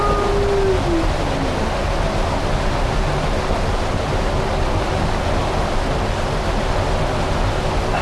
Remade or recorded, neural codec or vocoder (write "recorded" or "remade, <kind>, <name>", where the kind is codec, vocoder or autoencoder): recorded